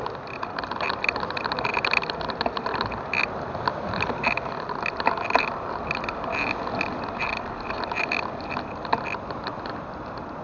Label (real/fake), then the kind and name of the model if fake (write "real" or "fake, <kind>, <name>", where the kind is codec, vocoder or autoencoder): real